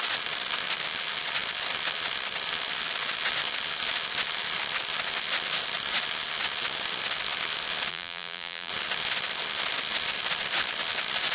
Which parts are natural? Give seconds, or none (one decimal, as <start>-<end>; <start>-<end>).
0.0-7.9; 8.7-11.3